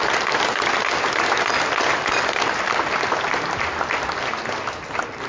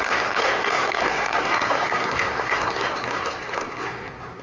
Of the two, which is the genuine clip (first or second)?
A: first